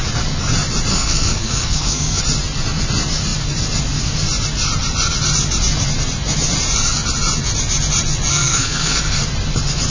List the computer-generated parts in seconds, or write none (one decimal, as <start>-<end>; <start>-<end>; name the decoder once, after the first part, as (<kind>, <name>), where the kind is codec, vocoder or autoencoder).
0.9-2.2 (codec, SNAC); 8.3-9.0